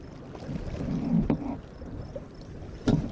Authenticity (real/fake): real